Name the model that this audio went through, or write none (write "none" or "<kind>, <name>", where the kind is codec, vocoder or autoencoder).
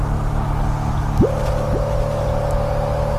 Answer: none